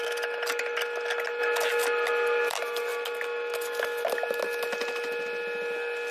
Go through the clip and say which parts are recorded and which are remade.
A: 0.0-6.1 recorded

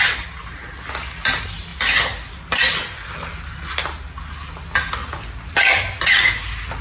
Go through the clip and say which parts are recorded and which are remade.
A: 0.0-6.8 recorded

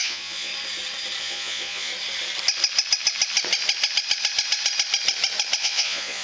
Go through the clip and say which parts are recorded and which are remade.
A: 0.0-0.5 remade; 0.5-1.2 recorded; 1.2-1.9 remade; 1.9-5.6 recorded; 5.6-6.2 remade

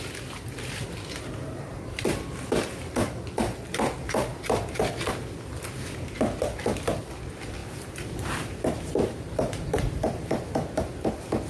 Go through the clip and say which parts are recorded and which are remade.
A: 0.0-1.7 recorded; 1.7-2.2 remade; 2.2-7.6 recorded; 7.6-10.9 remade; 10.9-11.5 recorded

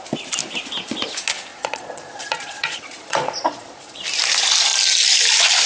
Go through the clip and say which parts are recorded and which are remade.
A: 0.0-1.5 recorded; 1.5-4.0 remade; 4.0-5.7 recorded

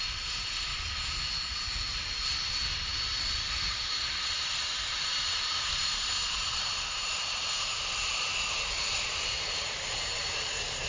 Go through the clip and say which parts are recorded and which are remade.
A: 0.0-0.7 remade; 0.7-3.6 recorded; 3.6-10.9 remade

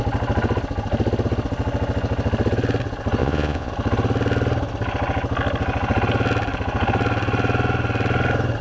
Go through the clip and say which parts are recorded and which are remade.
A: 0.0-3.2 recorded; 3.2-3.7 remade; 3.7-8.6 recorded